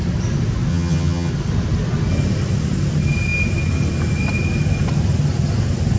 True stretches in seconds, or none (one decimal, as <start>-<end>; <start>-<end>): 0.0-0.7; 1.3-6.0